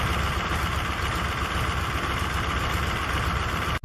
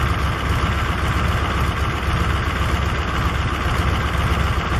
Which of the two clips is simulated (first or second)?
first